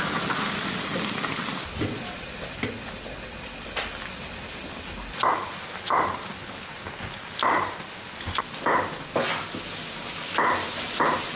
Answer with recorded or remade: recorded